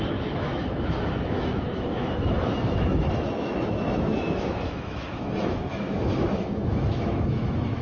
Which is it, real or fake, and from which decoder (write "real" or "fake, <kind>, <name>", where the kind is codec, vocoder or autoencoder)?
fake, autoencoder, DAC-VAE